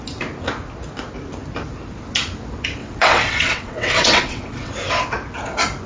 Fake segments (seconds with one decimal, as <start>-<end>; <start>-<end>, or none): 2.8-4.7